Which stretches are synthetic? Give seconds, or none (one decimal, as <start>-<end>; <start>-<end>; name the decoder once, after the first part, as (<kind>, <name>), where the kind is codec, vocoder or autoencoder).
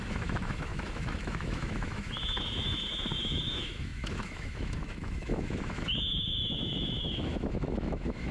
0.0-8.3 (autoencoder, DAC-VAE)